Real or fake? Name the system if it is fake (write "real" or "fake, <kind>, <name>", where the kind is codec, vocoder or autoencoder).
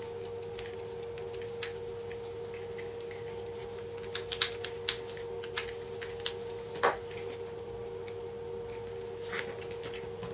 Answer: real